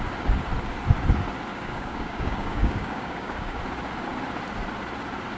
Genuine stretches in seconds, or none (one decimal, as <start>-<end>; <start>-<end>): 0.0-1.5; 3.6-5.4